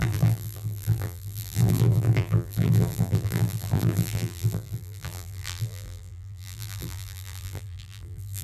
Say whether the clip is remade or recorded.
remade